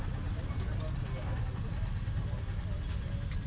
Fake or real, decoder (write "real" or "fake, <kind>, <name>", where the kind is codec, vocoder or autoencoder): real